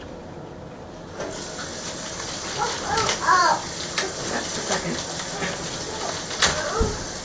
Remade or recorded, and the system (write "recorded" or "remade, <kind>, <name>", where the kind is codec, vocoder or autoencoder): recorded